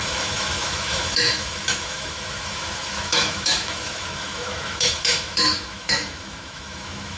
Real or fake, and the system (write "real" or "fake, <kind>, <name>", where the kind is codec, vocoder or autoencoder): fake, autoencoder, DAC-VAE